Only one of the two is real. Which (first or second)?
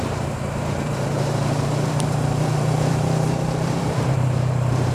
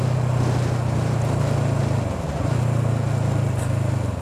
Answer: second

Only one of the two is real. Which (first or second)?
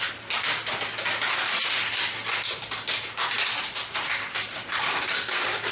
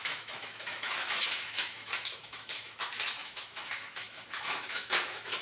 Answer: first